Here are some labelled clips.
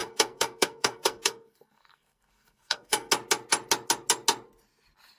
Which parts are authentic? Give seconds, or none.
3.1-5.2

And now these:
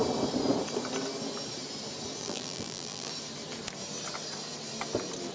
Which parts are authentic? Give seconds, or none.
0.0-2.2; 3.1-5.3

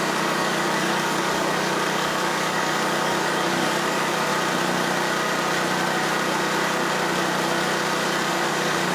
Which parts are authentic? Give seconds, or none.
4.3-8.3

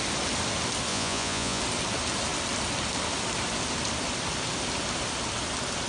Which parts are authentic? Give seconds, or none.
0.0-0.9; 1.6-5.9

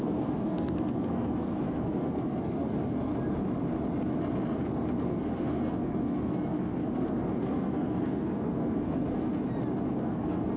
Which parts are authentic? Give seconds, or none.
3.1-5.0; 9.3-9.9

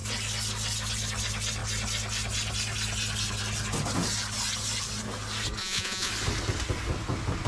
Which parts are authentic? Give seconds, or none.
0.0-5.6; 6.1-7.5

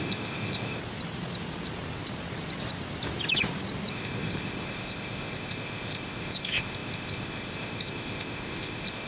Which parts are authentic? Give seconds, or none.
0.8-3.9